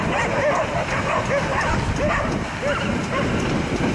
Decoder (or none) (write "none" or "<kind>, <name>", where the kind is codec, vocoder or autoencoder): none